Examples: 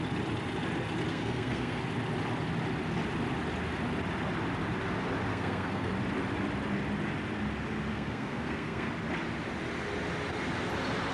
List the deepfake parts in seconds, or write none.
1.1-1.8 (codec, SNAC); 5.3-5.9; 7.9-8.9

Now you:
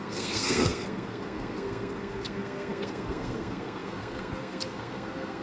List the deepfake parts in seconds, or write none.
0.0-5.4 (codec, SNAC)

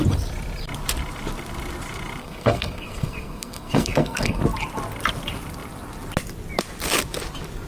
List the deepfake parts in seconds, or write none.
2.2-4.4 (codec, SNAC)

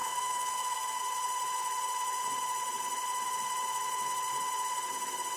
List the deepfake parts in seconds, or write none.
0.0-1.0 (codec, SNAC)

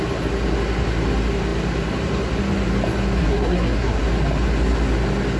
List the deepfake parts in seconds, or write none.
3.2-4.0 (codec, SNAC)

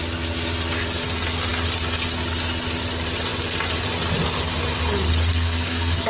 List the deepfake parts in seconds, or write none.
5.3-6.1 (codec, SNAC)

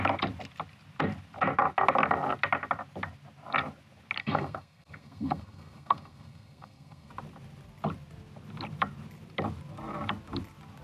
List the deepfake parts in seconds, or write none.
4.2-7.1 (codec, SNAC)